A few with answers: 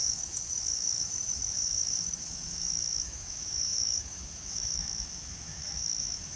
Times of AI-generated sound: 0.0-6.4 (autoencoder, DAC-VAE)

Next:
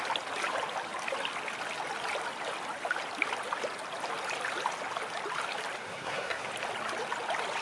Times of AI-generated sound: 5.8-6.5 (codec, SNAC)

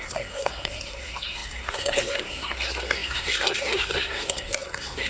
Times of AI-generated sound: 0.0-5.1 (codec, SNAC)

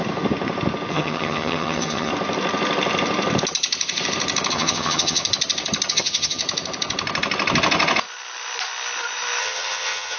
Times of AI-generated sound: 0.9-2.1 (vocoder, HiFi-GAN); 4.5-5.2; 5.9-6.4; 9.4-10.2

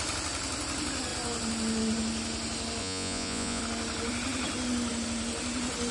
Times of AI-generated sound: 2.8-3.6 (vocoder, Vocos)